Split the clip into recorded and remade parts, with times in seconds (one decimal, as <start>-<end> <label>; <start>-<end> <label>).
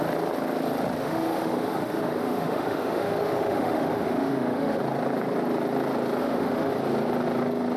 0.0-1.0 recorded; 1.0-4.8 remade; 4.8-6.2 recorded; 6.2-6.7 remade; 6.7-7.8 recorded